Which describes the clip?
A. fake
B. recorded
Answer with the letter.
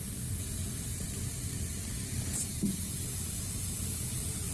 B